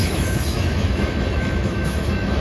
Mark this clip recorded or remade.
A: remade